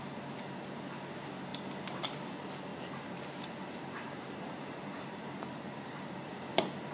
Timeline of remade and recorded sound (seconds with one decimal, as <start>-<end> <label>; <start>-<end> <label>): 0.0-2.7 recorded; 2.7-6.5 remade; 6.5-6.9 recorded